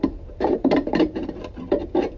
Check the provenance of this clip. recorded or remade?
remade